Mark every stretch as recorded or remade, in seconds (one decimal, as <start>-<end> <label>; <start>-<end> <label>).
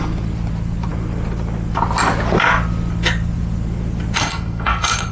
0.0-4.2 recorded; 4.2-5.1 remade